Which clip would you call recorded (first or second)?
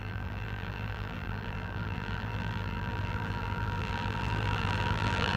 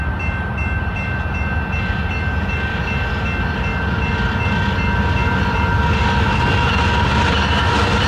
second